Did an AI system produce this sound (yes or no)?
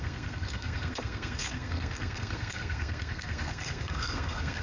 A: yes